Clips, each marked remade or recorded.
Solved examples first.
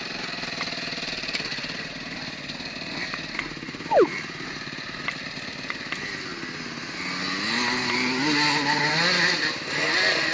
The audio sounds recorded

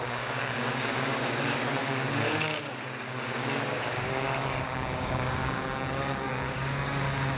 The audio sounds remade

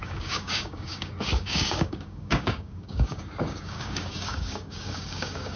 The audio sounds remade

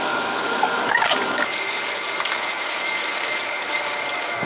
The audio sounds remade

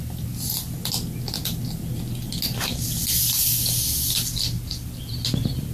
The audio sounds recorded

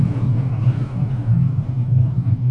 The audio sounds remade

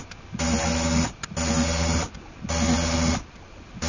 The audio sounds recorded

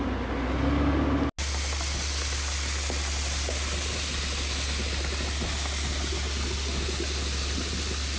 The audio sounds recorded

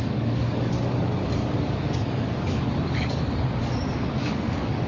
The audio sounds remade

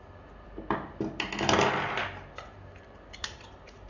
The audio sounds recorded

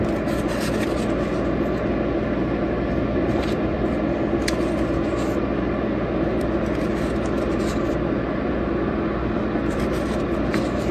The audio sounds recorded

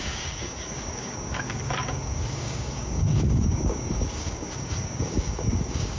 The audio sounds remade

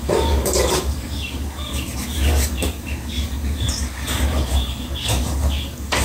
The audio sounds remade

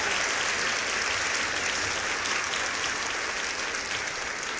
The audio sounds recorded